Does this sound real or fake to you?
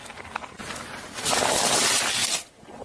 real